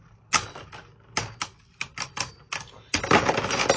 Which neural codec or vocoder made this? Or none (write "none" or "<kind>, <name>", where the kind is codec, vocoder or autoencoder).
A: none